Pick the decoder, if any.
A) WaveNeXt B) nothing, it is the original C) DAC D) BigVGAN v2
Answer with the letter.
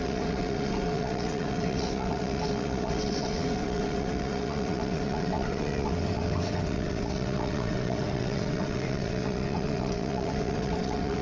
A